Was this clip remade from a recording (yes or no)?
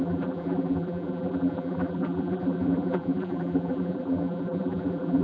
yes